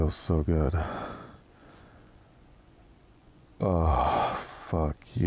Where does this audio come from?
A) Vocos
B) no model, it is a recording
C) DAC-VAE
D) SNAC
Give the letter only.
A